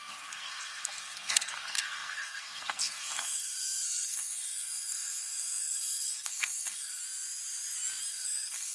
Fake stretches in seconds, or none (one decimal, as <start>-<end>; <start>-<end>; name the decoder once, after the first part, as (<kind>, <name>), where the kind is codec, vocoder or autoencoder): 0.0-7.0 (codec, SNAC); 8.1-8.7